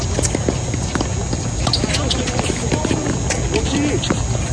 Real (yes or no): yes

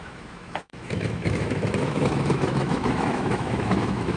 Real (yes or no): no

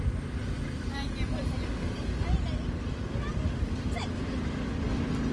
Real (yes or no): yes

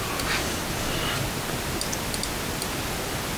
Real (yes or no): yes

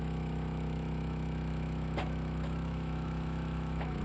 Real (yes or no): no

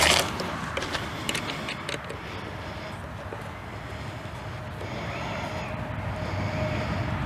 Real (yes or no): yes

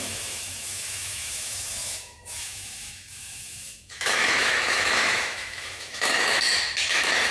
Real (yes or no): no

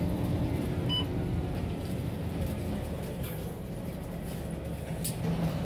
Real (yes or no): yes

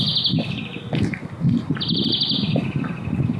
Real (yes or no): yes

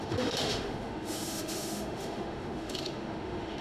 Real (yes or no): no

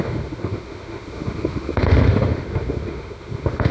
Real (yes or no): no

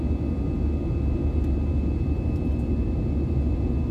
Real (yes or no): yes